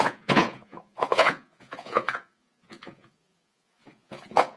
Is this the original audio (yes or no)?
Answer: no